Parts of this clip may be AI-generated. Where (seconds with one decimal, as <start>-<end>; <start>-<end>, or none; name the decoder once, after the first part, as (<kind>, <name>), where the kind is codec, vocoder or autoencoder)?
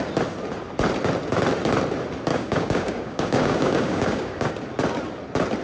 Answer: 2.3-4.5 (codec, DAC)